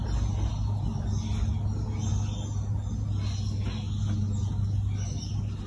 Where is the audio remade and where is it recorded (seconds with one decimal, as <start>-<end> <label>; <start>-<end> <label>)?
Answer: 0.0-5.7 recorded